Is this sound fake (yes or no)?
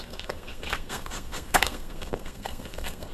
yes